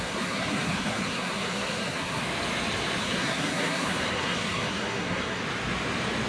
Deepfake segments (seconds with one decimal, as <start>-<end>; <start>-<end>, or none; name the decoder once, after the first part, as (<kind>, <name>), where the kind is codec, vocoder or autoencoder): 0.0-2.2 (codec, SNAC); 3.0-5.4